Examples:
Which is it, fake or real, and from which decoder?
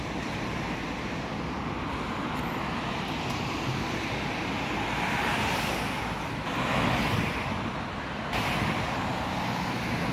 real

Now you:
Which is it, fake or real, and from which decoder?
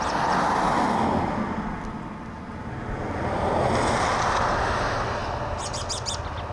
real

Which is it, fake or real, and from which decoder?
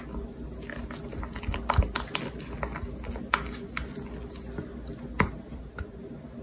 real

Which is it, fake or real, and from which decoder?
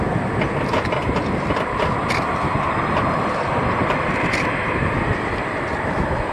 real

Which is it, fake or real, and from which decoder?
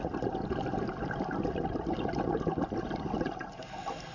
real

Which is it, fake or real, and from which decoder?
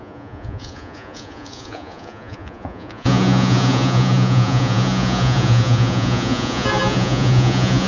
fake, vocoder, Vocos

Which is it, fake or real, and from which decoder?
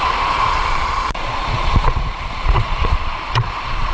fake, vocoder, Vocos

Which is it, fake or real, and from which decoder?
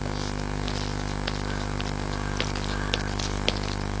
real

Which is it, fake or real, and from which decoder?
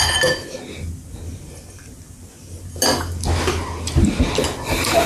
real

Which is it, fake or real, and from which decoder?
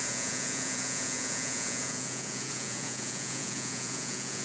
fake, vocoder, Vocos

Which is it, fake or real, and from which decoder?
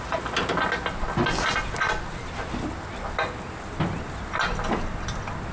real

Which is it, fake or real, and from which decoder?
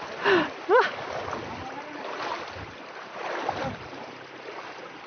real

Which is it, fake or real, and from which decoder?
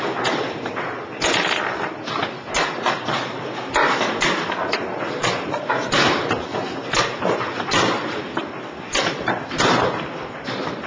real